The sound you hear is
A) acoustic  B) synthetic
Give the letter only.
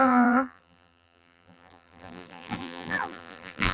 B